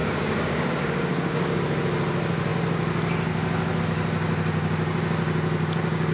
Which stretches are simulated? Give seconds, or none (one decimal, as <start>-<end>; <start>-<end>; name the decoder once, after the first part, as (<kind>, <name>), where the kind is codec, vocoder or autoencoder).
0.0-1.6 (codec, DAC)